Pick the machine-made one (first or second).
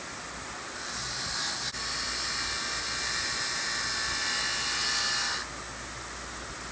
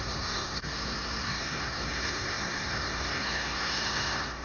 second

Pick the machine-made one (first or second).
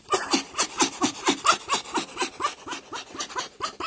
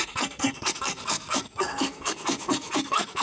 second